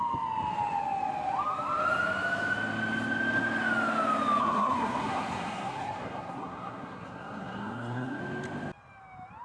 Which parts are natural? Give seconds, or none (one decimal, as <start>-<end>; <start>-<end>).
0.0-4.4; 8.2-9.4